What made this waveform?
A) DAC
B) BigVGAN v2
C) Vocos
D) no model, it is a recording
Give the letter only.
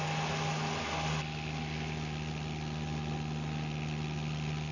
D